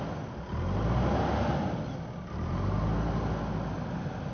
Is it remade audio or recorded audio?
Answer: recorded